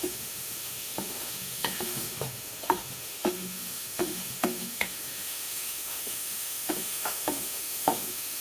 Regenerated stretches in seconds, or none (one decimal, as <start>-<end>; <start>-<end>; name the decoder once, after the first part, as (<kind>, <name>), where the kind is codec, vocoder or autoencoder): 0.0-8.4 (autoencoder, DAC-VAE)